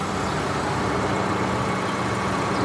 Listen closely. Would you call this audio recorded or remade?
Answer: recorded